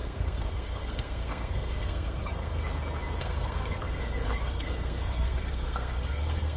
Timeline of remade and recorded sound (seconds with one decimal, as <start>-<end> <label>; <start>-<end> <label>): 0.0-2.6 remade; 2.6-3.2 recorded; 3.2-6.6 remade